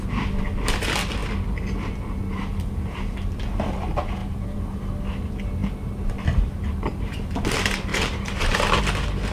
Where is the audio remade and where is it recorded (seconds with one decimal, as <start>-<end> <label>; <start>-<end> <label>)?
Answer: 0.0-4.2 recorded; 4.2-4.8 remade; 4.8-7.9 recorded; 7.9-8.8 remade; 8.8-9.3 recorded